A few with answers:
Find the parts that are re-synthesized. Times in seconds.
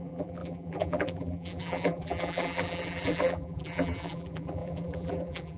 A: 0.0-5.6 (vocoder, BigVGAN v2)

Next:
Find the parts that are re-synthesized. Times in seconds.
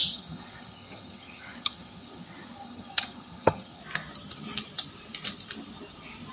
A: 0.0-3.8 (vocoder, HiFi-GAN)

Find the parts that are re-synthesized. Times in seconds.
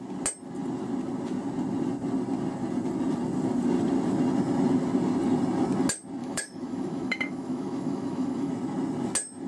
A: 6.2-8.5 (autoencoder, DAC-VAE)